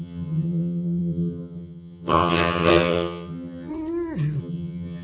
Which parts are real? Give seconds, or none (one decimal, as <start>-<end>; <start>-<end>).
3.7-4.4